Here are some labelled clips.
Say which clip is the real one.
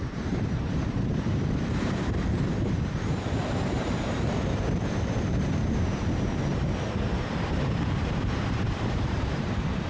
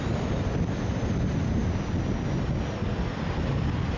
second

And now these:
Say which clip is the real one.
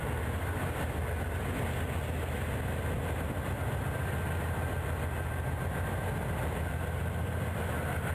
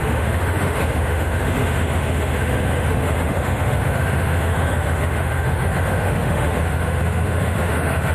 first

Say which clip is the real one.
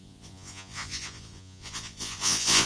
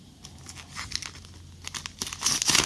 second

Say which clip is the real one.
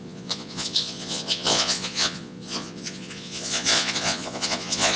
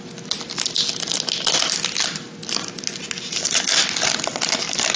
second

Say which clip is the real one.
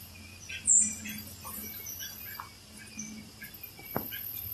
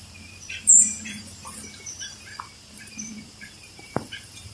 first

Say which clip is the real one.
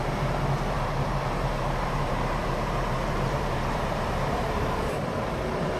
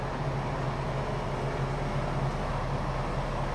second